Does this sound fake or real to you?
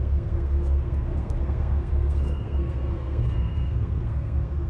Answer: fake